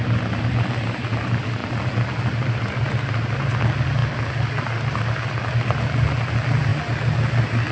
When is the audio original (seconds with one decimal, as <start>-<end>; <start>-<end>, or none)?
0.0-7.7